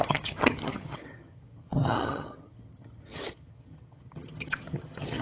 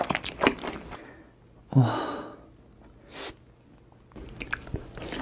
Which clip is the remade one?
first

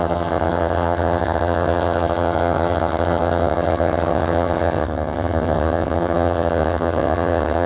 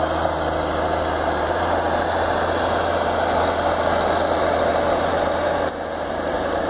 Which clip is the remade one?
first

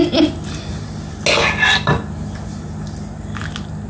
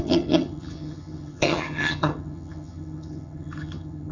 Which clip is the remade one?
second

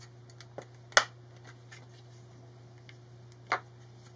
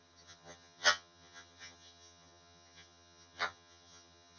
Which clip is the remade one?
second